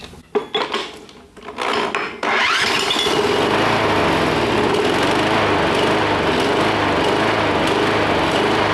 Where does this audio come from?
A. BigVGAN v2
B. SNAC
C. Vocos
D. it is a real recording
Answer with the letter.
D